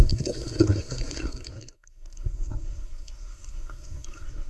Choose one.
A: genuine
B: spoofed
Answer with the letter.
B